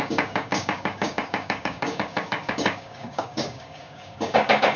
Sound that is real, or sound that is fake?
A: fake